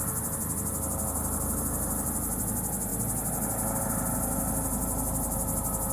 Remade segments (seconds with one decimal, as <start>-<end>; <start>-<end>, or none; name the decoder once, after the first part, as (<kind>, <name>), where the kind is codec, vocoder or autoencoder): none